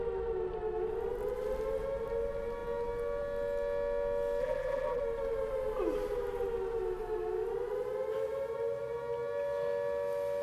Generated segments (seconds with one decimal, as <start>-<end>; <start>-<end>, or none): 4.4-5.0